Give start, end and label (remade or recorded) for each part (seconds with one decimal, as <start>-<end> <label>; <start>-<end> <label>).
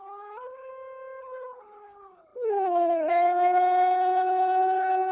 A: 0.0-0.7 remade; 0.7-1.2 recorded; 1.2-5.1 remade